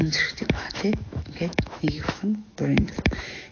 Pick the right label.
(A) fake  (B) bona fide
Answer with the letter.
A